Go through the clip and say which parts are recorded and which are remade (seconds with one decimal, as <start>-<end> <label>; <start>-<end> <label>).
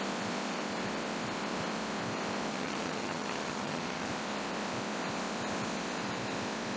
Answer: 0.0-2.5 recorded; 2.5-4.1 remade; 4.1-6.8 recorded